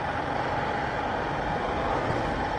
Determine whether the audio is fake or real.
real